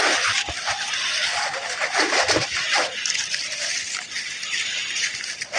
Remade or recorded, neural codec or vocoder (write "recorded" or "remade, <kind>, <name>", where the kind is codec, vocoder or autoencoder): recorded